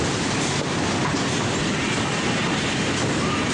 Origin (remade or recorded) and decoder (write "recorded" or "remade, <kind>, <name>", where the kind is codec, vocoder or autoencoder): recorded